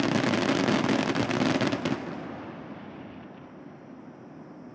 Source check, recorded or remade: recorded